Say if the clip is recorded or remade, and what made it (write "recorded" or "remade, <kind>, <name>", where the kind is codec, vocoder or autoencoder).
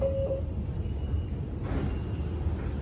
recorded